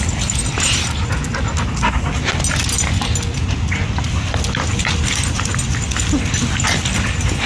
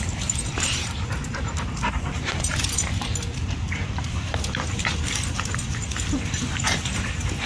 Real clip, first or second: first